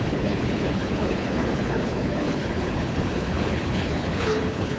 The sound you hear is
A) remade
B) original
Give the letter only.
A